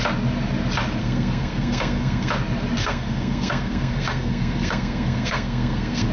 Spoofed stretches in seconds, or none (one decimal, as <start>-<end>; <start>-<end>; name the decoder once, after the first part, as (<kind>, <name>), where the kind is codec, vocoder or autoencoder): 1.0-2.3 (codec, SNAC); 2.8-6.1